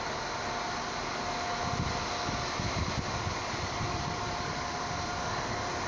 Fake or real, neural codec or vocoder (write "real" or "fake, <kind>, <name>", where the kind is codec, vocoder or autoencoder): real